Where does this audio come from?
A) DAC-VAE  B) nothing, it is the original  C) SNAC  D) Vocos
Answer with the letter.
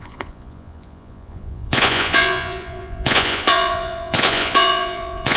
D